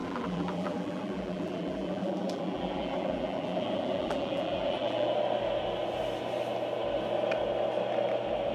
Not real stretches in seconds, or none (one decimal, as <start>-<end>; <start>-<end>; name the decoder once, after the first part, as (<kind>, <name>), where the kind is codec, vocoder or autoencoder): 0.0-5.1 (vocoder, BigVGAN v2)